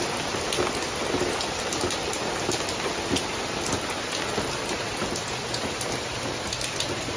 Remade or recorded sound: recorded